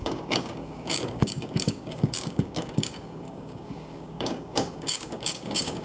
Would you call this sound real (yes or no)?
no